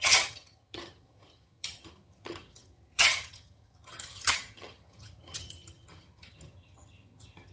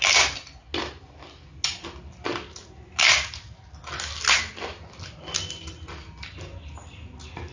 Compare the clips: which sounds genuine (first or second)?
second